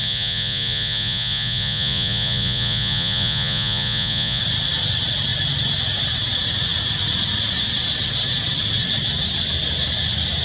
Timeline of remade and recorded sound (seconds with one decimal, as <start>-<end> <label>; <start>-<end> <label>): 0.0-4.4 remade; 4.4-10.4 recorded